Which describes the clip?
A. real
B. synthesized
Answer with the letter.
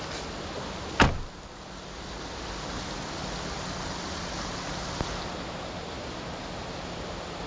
A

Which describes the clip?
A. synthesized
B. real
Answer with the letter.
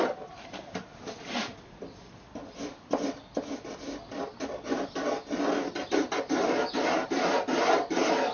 B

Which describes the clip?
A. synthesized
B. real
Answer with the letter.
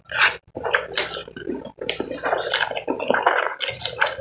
B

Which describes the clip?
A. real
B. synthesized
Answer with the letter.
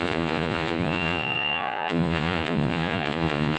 B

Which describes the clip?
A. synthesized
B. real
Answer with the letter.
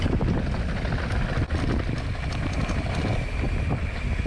B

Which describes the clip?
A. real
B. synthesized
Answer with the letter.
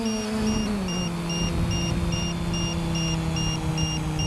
A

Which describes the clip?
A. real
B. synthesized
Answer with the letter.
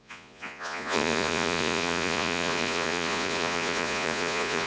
B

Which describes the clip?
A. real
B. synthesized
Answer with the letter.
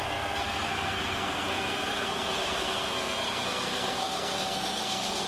B